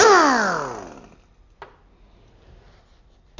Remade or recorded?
recorded